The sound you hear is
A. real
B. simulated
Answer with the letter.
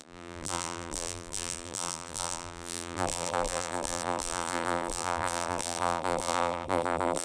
B